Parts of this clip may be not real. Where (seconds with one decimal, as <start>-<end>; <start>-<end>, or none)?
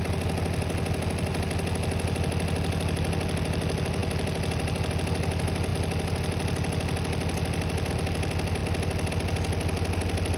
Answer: none